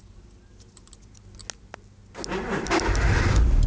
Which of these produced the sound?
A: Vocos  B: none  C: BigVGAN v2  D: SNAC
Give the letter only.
B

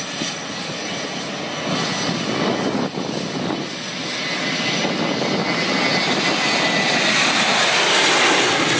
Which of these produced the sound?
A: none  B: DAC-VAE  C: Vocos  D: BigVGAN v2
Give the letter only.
A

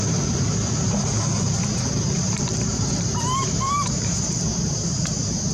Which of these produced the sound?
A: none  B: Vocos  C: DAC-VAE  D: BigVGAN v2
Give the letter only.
D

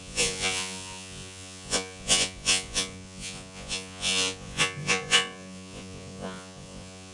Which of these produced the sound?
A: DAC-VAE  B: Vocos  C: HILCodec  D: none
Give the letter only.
B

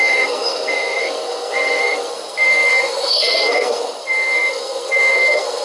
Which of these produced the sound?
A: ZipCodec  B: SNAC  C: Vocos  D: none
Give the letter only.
B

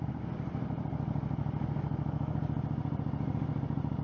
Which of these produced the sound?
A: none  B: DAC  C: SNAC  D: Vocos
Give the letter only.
A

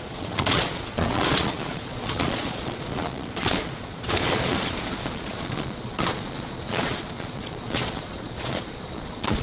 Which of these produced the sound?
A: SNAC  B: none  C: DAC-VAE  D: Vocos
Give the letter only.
D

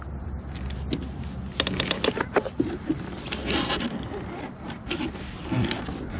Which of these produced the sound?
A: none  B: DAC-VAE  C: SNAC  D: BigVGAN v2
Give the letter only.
A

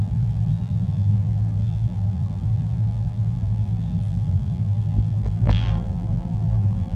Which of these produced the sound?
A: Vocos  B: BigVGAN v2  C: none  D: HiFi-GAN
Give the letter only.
B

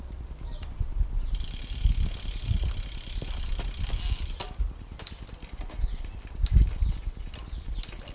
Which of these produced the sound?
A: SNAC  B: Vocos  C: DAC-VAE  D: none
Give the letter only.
D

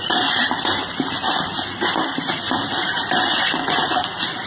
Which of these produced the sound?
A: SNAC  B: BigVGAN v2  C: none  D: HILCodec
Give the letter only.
B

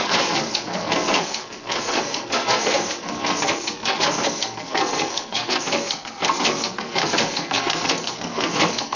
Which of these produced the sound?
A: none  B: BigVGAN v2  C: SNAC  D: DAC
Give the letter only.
C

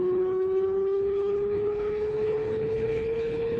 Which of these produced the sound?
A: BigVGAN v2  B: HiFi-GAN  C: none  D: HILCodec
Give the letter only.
D